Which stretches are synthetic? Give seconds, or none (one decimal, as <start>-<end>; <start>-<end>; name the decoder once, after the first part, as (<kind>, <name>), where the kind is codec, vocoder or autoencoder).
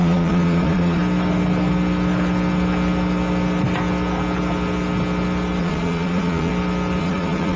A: 0.0-1.0 (vocoder, Vocos); 5.6-6.5; 7.0-7.6